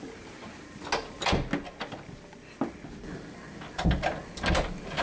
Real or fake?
real